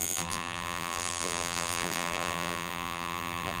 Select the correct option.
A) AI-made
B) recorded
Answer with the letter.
A